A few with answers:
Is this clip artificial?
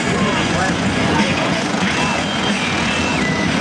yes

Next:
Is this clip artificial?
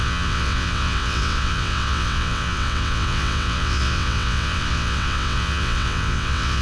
yes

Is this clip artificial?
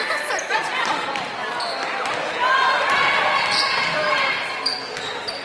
no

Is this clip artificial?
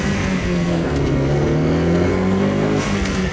yes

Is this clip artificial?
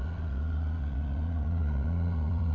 yes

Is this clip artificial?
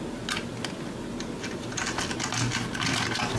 no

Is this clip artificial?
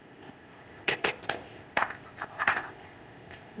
yes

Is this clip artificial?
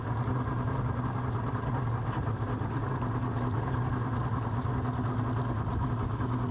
no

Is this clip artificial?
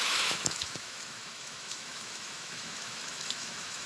yes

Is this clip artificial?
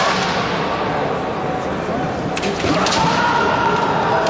no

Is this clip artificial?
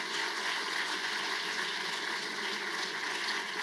yes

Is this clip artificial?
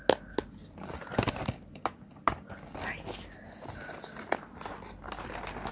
no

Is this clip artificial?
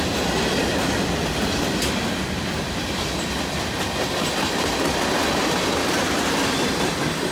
no